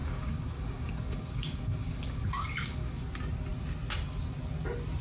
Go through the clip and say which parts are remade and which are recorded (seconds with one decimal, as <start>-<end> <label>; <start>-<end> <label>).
0.0-3.0 remade; 3.0-5.0 recorded